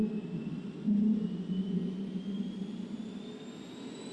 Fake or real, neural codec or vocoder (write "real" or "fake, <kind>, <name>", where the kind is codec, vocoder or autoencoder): real